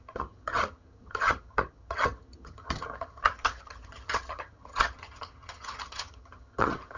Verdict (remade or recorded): remade